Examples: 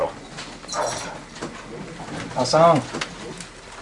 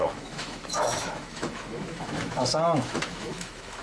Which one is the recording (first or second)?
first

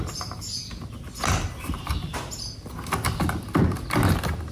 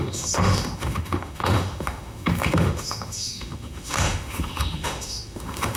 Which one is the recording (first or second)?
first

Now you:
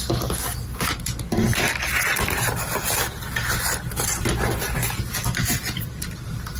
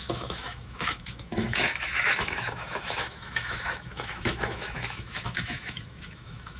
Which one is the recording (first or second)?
first